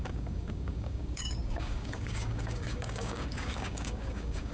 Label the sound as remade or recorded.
remade